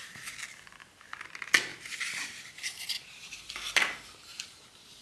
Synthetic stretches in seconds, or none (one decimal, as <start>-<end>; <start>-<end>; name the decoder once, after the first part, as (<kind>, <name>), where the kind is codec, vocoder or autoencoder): 1.7-5.0 (vocoder, BigVGAN v2)